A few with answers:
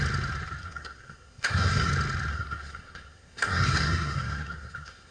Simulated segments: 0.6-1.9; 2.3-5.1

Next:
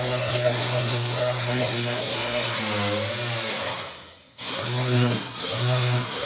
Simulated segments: 0.0-2.6; 3.5-6.3